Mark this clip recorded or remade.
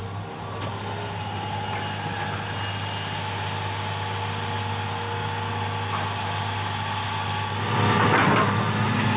recorded